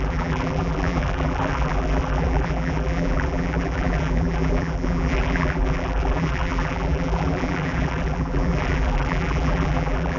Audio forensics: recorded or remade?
remade